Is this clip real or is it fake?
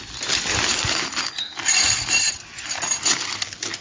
real